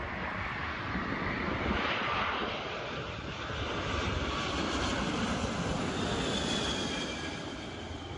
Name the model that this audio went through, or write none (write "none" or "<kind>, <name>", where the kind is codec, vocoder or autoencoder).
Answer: vocoder, BigVGAN v2